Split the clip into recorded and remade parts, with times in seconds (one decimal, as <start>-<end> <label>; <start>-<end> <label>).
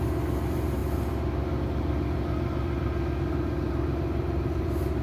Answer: 0.0-5.0 recorded